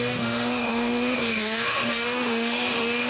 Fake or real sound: fake